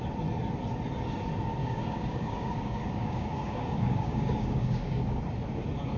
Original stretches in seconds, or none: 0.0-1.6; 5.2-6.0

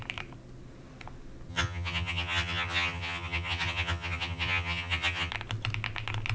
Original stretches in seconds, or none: 0.0-1.5; 5.3-6.3

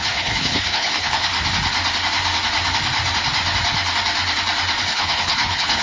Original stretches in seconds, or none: 1.3-4.8

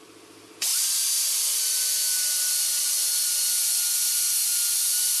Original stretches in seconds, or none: 0.0-0.7; 3.8-4.5

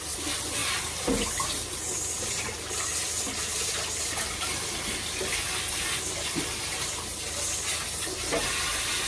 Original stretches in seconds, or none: 0.0-9.1